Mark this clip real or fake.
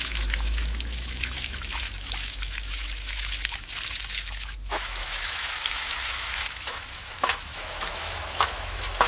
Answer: fake